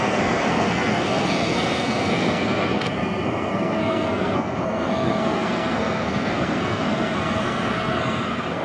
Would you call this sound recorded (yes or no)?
no